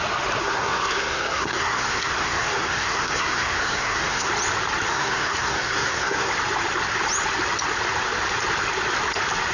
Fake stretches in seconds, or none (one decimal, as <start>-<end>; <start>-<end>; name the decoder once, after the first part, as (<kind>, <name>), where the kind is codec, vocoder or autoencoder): 0.4-4.3 (codec, SNAC); 4.9-6.3